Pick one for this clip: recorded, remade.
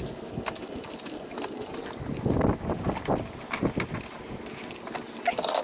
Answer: recorded